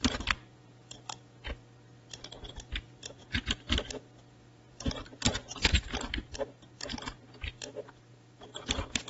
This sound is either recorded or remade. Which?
recorded